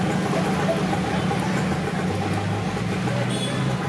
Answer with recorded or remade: recorded